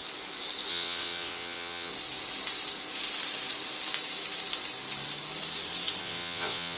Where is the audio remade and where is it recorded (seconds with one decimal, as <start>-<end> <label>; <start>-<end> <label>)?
0.0-0.7 recorded; 0.7-1.9 remade; 1.9-6.0 recorded; 6.0-6.8 remade